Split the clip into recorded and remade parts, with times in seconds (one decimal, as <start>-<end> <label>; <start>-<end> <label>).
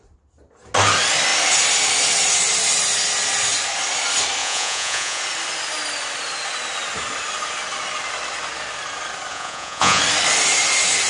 0.0-4.4 recorded; 4.4-5.2 remade; 5.2-9.3 recorded; 9.3-10.0 remade; 10.0-11.1 recorded